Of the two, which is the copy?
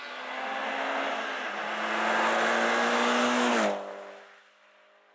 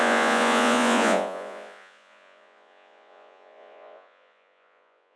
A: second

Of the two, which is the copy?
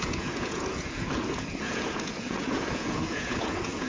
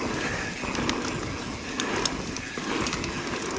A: first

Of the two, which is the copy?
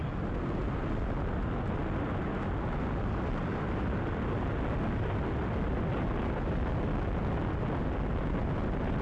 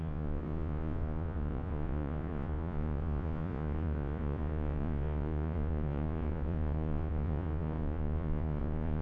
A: second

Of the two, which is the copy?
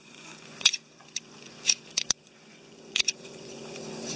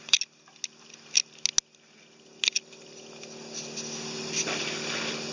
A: first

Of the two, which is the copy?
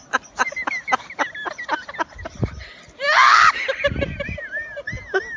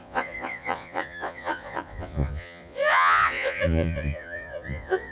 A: second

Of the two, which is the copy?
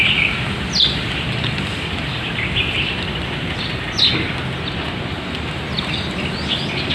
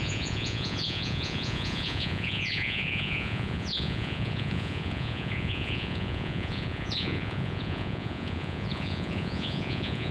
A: second